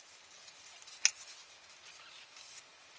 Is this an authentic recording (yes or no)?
yes